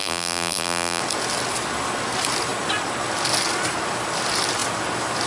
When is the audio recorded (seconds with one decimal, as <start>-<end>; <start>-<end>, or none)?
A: 1.0-5.3